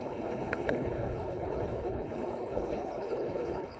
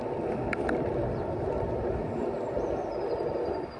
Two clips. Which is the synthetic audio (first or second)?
first